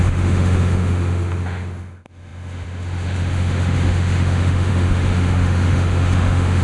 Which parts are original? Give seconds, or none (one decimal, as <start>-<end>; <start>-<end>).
none

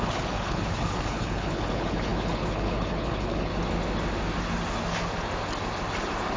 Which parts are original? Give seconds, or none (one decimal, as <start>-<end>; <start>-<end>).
3.5-6.4

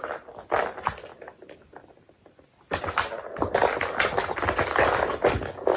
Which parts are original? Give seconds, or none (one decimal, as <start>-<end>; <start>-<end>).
0.0-5.8

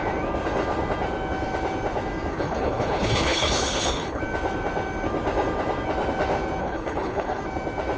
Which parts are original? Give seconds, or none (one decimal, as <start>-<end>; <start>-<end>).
0.0-2.3; 4.2-6.6; 7.4-8.0

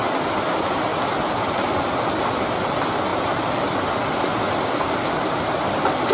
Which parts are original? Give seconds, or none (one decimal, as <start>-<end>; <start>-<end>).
0.0-6.1

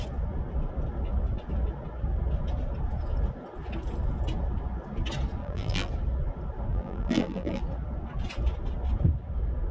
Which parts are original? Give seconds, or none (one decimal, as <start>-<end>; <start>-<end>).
0.0-5.4; 5.9-6.7; 7.6-9.7

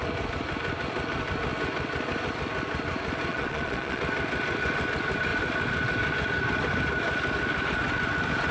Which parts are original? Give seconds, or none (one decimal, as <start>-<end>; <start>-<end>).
0.0-3.3; 4.0-8.5

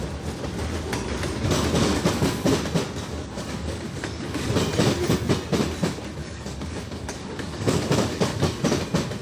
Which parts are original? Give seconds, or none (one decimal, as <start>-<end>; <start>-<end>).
0.0-1.9; 2.5-3.1; 4.5-6.2; 8.6-9.2